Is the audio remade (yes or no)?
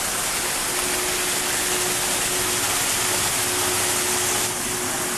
no